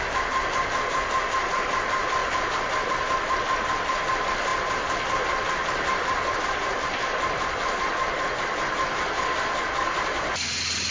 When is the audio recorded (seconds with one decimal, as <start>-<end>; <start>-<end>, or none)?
0.0-10.9